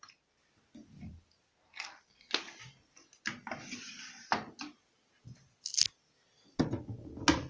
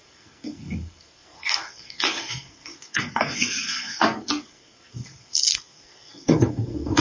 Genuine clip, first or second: first